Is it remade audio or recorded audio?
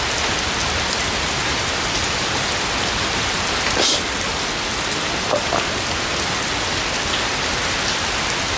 recorded